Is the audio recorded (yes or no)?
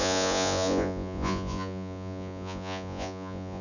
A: no